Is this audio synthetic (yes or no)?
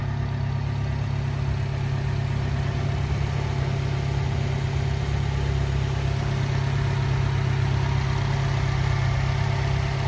no